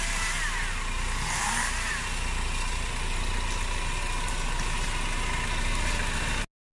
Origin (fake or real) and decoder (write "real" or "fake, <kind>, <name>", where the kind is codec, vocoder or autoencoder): real